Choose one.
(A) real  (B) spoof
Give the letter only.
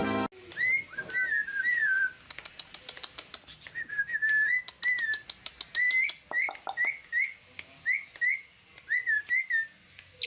A